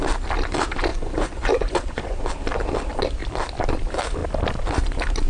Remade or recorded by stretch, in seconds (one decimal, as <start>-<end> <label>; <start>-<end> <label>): 0.0-0.9 recorded; 0.9-2.2 remade; 2.2-5.3 recorded